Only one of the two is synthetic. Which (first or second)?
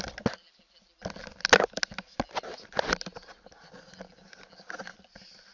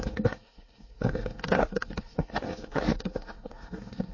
second